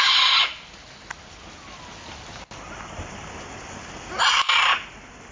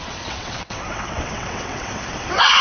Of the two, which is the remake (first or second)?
second